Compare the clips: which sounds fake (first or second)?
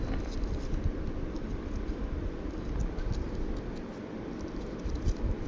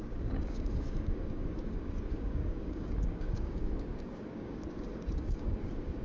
second